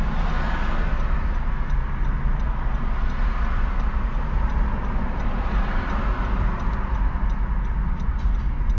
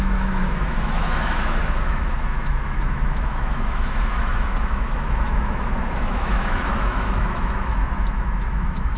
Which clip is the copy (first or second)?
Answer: second